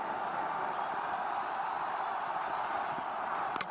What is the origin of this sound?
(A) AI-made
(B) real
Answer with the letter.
B